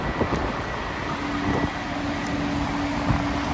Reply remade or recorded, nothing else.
recorded